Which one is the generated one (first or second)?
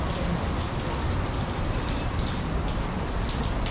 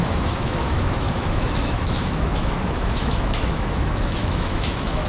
second